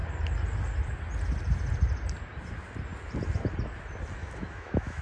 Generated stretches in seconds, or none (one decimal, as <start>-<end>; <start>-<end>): 4.2-5.0